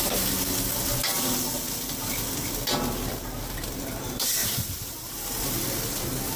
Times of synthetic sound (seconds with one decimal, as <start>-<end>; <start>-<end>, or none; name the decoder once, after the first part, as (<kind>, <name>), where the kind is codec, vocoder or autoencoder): 0.0-1.1 (vocoder, BigVGAN v2); 3.1-4.4; 5.4-6.4